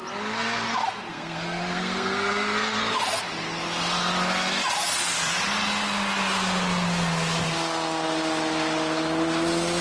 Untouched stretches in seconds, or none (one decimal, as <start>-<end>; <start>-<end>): 0.0-1.1; 2.8-9.8